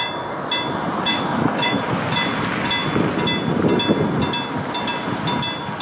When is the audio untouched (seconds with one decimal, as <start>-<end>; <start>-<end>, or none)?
0.0-1.1; 1.8-5.8